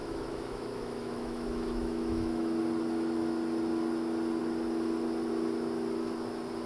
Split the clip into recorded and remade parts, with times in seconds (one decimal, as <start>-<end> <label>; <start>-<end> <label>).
0.0-2.6 remade; 2.6-6.7 recorded